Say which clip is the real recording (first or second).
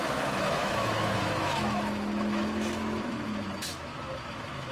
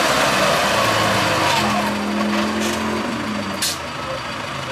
second